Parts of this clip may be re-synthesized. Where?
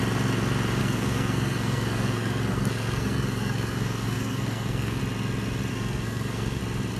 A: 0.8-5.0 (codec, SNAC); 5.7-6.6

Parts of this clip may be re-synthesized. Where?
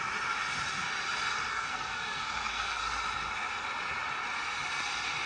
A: 1.5-2.8 (codec, SNAC)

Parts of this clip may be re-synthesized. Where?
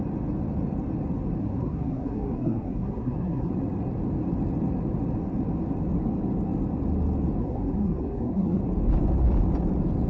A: 1.4-3.5 (codec, SNAC); 7.4-8.6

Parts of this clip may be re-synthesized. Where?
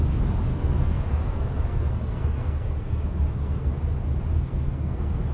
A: 0.5-3.7 (codec, SNAC); 4.3-5.3